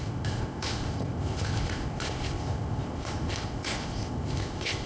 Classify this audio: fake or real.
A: fake